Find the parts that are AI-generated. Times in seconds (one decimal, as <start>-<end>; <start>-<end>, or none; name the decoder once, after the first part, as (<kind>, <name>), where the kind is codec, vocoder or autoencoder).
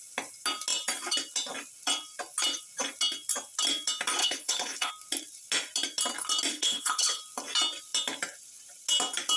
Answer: 4.2-4.9 (codec, HILCodec); 6.5-7.2